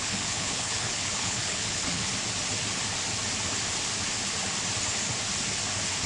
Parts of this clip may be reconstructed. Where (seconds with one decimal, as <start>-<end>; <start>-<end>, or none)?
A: 0.0-2.1